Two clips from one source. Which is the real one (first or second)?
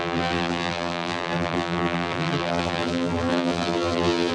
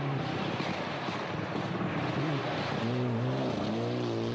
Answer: second